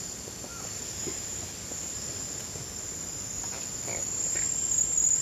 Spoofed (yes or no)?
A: no